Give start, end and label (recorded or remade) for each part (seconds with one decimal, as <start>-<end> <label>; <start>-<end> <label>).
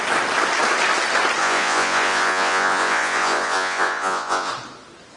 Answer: 0.0-1.4 recorded; 1.4-4.5 remade; 4.5-5.2 recorded